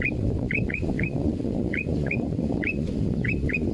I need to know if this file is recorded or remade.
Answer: remade